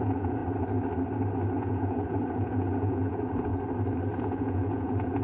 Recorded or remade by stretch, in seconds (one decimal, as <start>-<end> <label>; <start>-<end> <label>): 0.0-0.4 remade; 0.4-1.6 recorded; 1.6-3.5 remade; 3.5-4.2 recorded; 4.2-5.2 remade

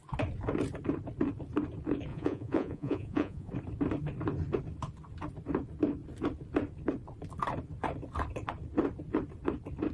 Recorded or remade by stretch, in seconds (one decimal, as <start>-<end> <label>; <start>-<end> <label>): 0.0-2.1 recorded; 2.1-3.5 remade; 3.5-9.9 recorded